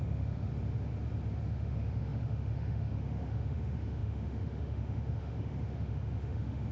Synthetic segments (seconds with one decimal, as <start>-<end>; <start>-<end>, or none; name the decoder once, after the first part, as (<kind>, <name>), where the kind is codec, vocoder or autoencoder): 0.0-0.5 (autoencoder, DAC-VAE); 1.4-6.7

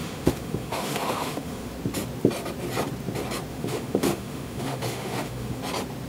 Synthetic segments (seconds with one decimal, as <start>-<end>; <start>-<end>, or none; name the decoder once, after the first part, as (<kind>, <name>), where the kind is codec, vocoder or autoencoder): 0.0-1.7 (autoencoder, DAC-VAE); 3.5-5.6